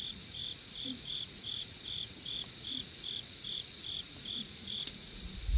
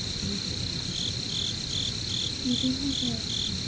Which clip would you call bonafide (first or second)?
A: second